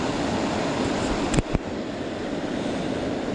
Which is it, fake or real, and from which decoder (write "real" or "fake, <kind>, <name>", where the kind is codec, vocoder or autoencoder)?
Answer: real